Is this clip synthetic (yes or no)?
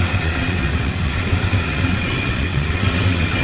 yes